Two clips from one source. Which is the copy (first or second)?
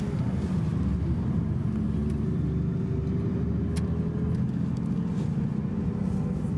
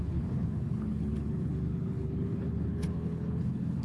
second